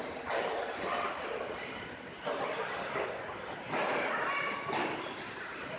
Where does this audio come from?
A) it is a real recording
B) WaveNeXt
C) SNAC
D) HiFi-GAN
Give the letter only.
A